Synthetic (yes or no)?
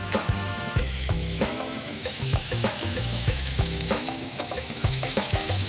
yes